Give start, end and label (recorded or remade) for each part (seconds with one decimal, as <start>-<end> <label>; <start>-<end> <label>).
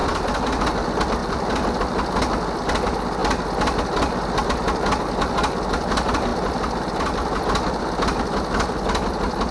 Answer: 0.0-0.6 remade; 0.6-1.2 recorded; 1.2-1.8 remade; 1.8-6.3 recorded; 6.3-7.4 remade; 7.4-9.5 recorded